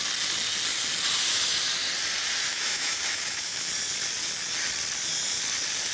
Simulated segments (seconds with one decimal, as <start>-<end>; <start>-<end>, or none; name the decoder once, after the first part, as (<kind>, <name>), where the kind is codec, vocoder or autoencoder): 2.5-3.7 (autoencoder, DAC-VAE)